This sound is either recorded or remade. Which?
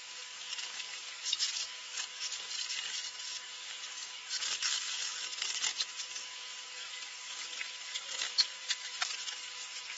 remade